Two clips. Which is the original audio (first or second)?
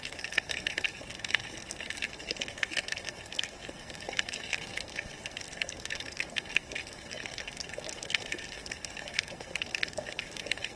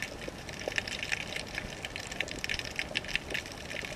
second